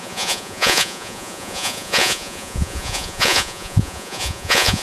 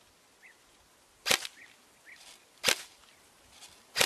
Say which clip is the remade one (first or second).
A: first